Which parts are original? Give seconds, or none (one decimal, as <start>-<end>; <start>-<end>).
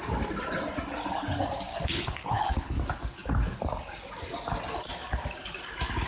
0.0-1.7; 2.8-6.1